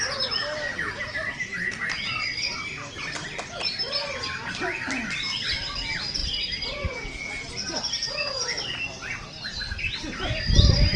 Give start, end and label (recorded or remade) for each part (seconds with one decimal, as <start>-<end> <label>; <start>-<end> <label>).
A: 0.0-11.0 recorded